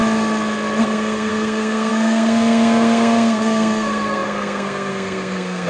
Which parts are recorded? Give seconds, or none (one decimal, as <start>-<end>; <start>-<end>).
0.0-0.8